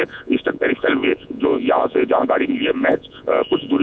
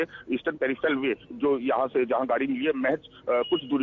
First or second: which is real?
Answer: second